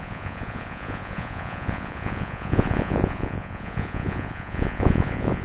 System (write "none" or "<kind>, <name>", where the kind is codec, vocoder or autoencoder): vocoder, Vocos